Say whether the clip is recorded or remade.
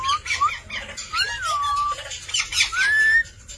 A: recorded